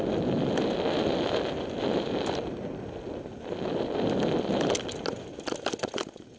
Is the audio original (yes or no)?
yes